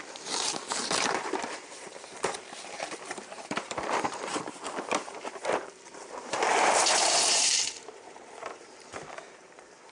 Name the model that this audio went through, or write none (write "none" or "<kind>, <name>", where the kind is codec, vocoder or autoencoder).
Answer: vocoder, BigVGAN v2